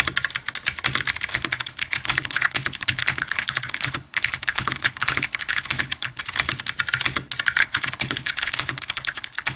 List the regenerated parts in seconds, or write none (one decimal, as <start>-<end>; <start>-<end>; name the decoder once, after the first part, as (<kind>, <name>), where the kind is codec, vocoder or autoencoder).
1.3-6.2 (codec, HILCodec); 7.6-9.6

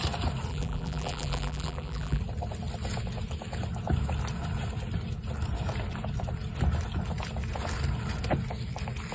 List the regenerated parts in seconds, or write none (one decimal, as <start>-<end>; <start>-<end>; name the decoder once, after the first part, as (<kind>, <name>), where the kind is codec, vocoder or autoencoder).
0.5-2.2 (vocoder, BigVGAN v2)

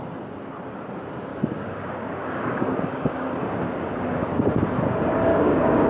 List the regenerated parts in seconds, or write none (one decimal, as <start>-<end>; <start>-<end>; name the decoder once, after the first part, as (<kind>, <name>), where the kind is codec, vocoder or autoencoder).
1.3-4.5 (codec, DAC); 5.3-5.9

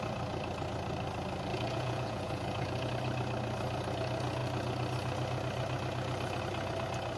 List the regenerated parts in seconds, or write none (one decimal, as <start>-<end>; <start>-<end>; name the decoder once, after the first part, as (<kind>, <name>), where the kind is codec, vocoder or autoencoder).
1.5-2.9 (vocoder, Vocos)

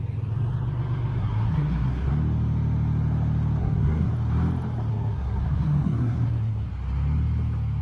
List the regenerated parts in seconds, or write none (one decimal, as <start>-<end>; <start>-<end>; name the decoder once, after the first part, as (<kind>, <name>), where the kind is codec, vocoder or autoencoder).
1.2-2.1 (codec, SNAC); 3.6-4.1; 4.9-6.7

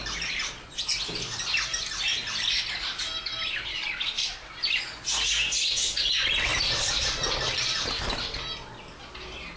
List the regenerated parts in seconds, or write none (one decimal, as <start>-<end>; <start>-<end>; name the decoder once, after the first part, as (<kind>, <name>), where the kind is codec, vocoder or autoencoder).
4.2-4.8 (vocoder, BigVGAN v2); 6.5-8.0